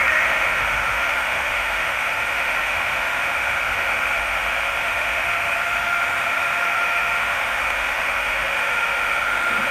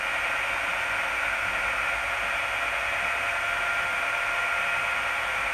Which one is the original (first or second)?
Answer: second